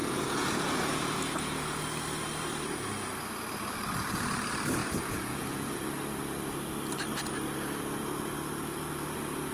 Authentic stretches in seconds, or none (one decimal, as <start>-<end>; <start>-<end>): 1.8-4.8; 5.8-9.5